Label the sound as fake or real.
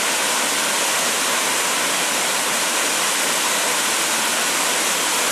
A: real